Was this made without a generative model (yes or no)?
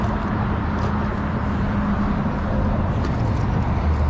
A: yes